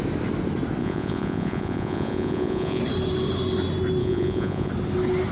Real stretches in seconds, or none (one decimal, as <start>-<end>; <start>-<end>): 0.0-0.8; 2.8-4.0; 4.7-5.3